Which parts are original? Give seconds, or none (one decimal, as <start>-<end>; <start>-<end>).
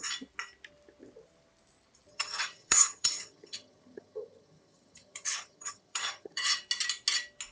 0.0-2.1; 6.6-7.5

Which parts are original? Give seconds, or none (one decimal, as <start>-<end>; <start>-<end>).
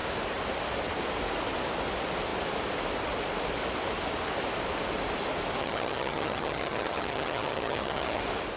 0.0-5.6; 8.2-8.6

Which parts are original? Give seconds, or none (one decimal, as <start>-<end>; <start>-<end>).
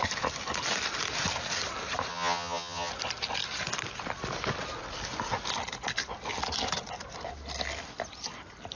0.0-2.1; 2.9-8.8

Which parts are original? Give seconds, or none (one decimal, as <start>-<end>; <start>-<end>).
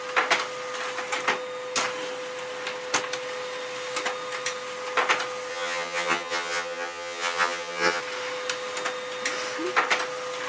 0.0-5.5; 8.0-10.5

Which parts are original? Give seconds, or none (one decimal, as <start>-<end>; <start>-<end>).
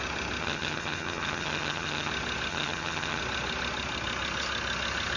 0.0-0.4; 2.1-2.5; 3.2-5.2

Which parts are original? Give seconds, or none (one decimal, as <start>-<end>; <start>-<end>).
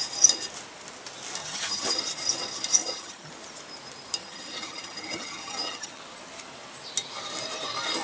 0.0-1.4; 2.0-2.8; 3.3-4.2; 6.0-8.0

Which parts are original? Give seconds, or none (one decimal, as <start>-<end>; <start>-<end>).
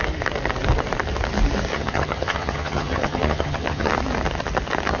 0.0-1.7; 3.9-5.0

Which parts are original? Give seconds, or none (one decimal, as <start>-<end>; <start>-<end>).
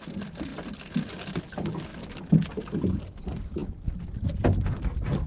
0.0-5.3